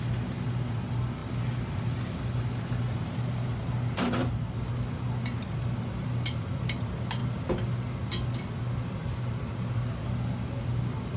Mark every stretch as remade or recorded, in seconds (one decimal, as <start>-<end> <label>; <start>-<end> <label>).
0.0-11.2 recorded